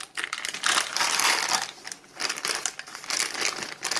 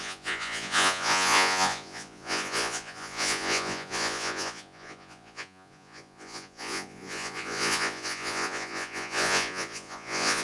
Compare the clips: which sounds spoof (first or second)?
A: second